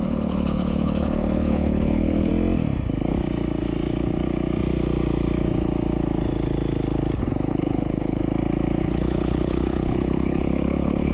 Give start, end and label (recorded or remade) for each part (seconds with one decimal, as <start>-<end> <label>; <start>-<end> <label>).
0.0-2.3 remade; 2.3-7.5 recorded; 7.5-8.2 remade; 8.2-8.8 recorded; 8.8-11.1 remade